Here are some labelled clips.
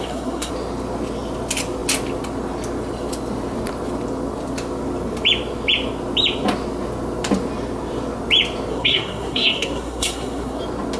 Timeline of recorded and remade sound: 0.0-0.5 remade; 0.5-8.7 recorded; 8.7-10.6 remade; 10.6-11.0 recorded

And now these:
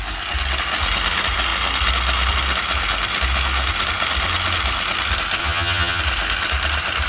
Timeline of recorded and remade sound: 0.0-5.4 recorded; 5.4-6.0 remade; 6.0-7.1 recorded

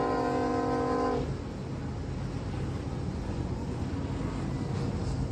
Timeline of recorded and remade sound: 0.0-2.9 recorded; 2.9-3.8 remade; 3.8-5.3 recorded

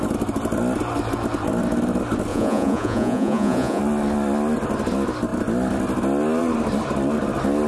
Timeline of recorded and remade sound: 0.0-2.3 recorded; 2.3-3.8 remade; 3.8-7.7 recorded